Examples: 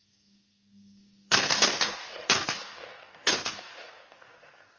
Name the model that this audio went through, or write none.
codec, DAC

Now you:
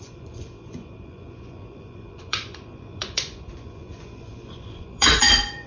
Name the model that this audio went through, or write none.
vocoder, Vocos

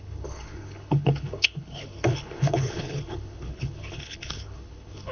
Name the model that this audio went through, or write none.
codec, HILCodec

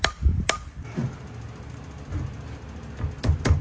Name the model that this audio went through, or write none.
none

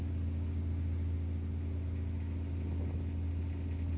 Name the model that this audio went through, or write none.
none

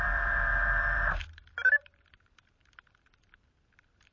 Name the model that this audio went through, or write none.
vocoder, BigVGAN v2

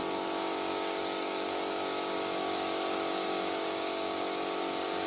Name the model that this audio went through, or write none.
codec, DAC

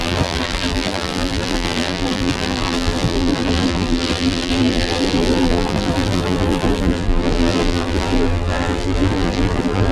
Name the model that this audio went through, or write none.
vocoder, BigVGAN v2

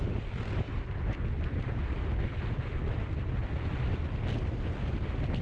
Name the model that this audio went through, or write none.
none